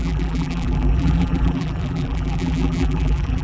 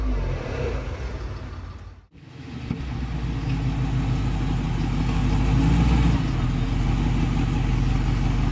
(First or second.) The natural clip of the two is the second